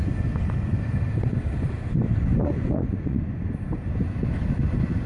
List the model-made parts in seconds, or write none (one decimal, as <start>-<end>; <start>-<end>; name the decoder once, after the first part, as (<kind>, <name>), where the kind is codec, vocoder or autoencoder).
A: 2.4-3.4 (vocoder, Vocos)

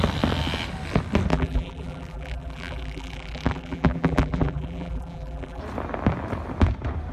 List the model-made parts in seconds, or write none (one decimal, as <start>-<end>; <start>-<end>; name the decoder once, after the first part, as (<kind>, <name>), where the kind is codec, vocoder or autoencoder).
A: 1.3-5.6 (vocoder, BigVGAN v2)